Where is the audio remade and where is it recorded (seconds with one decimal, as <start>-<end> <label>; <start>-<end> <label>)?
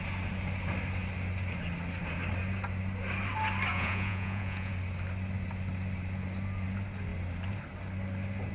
0.0-3.7 recorded; 3.7-4.7 remade; 4.7-8.5 recorded